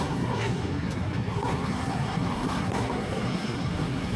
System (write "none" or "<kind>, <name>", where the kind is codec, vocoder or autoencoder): codec, SNAC